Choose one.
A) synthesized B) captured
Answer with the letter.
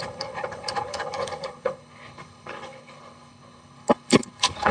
A